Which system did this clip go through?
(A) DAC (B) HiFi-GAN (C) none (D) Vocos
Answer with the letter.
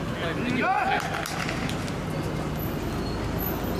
C